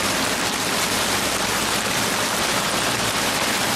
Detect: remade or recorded remade